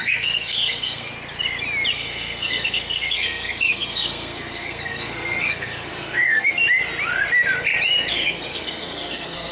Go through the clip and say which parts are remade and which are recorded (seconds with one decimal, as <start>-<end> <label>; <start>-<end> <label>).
0.0-1.1 remade; 1.1-1.9 recorded; 1.9-6.6 remade; 6.6-8.1 recorded; 8.1-9.5 remade